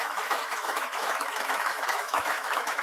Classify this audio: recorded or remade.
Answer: remade